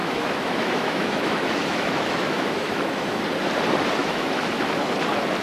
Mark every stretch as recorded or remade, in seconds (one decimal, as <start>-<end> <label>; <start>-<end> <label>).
0.0-3.2 remade; 3.2-4.0 recorded; 4.0-4.5 remade; 4.5-5.4 recorded